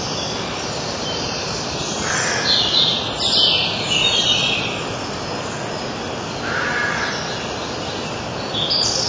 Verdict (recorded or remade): recorded